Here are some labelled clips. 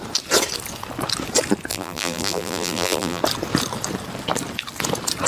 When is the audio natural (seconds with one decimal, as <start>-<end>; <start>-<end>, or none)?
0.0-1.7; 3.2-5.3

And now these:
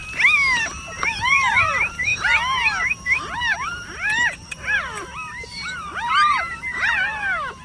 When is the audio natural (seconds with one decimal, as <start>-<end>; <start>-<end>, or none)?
0.0-0.6; 2.1-4.5

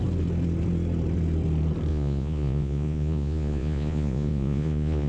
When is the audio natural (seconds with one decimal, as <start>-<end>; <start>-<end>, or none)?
0.0-1.9